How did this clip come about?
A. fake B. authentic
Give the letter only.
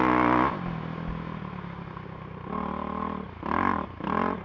B